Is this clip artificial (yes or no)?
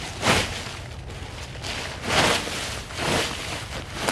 no